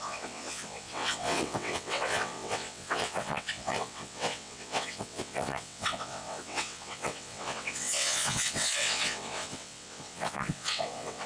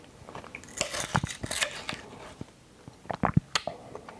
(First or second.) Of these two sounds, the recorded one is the second